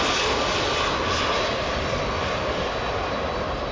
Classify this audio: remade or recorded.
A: recorded